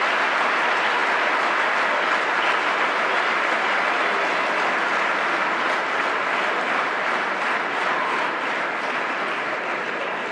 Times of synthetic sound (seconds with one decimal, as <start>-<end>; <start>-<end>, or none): none